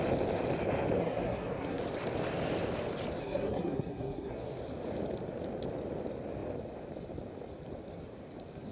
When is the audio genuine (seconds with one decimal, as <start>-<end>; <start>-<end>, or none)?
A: 0.0-1.0; 1.8-3.2; 4.6-8.7